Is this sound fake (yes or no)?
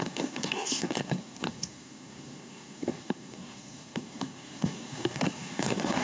yes